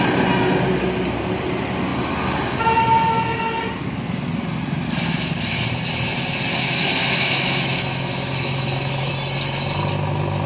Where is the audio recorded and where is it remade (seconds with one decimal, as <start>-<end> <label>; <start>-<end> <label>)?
0.0-6.5 recorded; 6.5-9.1 remade; 9.1-10.5 recorded